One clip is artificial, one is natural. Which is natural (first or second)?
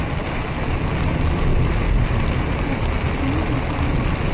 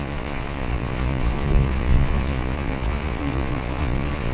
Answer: first